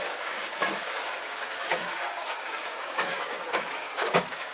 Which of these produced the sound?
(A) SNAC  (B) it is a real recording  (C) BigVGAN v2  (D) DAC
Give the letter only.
D